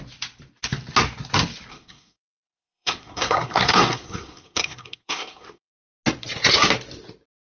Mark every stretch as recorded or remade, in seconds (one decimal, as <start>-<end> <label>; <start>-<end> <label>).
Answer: 0.0-1.7 recorded; 1.7-5.7 remade; 5.7-7.5 recorded